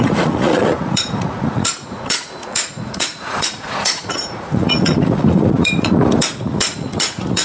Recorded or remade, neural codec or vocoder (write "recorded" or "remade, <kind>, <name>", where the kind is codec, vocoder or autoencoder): remade, vocoder, Vocos